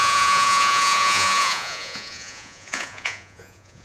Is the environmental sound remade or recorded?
remade